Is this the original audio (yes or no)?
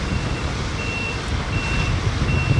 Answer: yes